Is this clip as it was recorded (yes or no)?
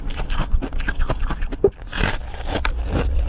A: yes